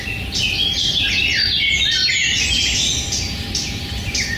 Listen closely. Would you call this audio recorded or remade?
recorded